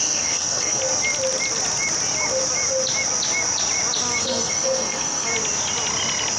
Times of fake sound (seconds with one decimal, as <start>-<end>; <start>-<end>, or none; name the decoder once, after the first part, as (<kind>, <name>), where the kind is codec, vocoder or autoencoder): 0.0-0.8 (codec, SNAC); 4.2-5.3